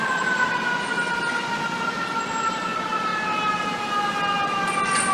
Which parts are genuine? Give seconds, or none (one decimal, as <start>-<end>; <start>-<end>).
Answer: 0.0-5.1